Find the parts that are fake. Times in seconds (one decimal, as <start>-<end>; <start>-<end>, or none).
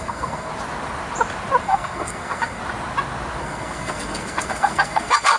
0.0-0.5; 1.6-2.6; 3.4-5.4